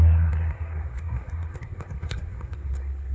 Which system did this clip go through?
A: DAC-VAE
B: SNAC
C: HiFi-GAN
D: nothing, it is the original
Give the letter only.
B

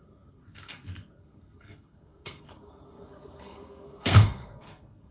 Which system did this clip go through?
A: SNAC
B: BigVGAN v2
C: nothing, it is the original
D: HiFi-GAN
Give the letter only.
A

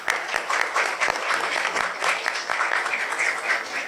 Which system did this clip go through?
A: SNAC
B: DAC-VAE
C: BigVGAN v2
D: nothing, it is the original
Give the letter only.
D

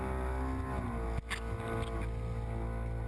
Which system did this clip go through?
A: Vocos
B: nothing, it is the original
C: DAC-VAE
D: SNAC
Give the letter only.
B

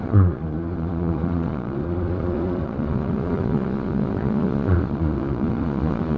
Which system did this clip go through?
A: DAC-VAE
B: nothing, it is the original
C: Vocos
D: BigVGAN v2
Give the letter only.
C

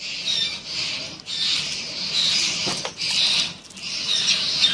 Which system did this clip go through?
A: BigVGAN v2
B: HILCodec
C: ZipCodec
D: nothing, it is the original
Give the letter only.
D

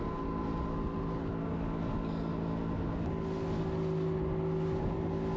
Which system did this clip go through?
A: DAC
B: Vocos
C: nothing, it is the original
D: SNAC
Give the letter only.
C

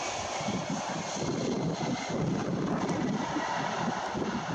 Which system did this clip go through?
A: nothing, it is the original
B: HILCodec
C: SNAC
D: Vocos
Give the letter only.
A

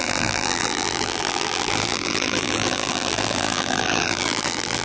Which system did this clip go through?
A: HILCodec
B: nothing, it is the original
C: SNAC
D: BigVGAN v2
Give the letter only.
D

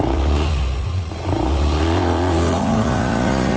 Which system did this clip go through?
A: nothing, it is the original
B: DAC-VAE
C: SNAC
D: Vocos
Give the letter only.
D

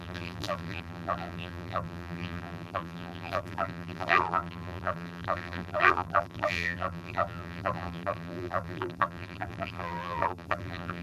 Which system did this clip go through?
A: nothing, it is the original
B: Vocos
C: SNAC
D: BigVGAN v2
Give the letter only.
D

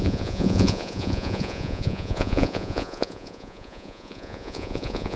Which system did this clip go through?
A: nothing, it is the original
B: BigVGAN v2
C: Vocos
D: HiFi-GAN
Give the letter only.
C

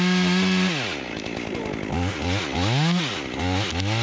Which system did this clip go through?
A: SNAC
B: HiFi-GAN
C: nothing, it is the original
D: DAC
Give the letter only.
C